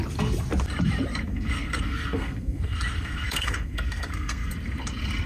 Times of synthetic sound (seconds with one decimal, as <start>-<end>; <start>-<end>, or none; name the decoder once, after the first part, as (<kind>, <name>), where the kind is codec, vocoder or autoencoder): 1.3-4.5 (codec, SNAC)